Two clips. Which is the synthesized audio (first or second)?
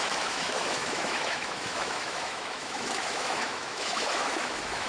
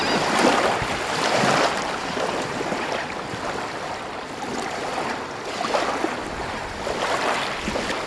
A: first